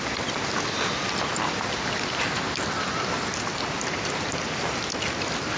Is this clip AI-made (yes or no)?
no